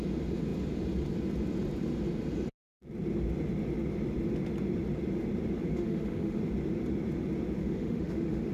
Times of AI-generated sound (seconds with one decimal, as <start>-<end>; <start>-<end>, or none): 5.7-6.4; 7.6-8.5